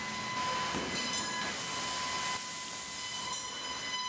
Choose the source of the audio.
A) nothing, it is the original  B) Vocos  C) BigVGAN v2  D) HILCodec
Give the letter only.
A